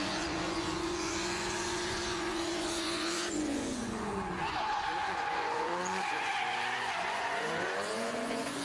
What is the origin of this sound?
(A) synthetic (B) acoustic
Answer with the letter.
A